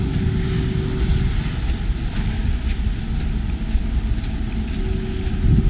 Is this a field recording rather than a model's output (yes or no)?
yes